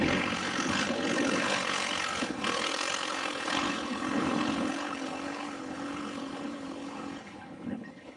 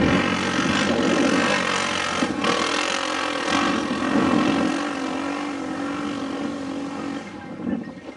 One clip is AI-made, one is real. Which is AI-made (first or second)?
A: first